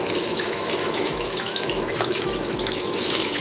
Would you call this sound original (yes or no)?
no